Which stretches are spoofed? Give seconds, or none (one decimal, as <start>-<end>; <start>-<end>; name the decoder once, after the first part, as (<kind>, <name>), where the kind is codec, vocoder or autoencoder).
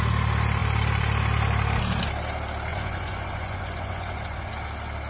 2.7-4.5 (vocoder, Vocos)